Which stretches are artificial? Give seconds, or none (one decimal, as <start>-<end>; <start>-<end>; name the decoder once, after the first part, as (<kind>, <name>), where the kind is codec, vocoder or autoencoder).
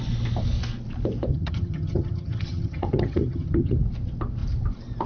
1.3-3.8 (vocoder, HiFi-GAN)